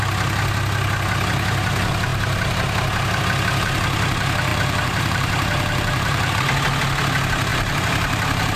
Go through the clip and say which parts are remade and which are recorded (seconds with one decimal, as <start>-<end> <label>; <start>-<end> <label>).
0.0-4.5 recorded; 4.5-6.3 remade; 6.3-7.5 recorded; 7.5-8.6 remade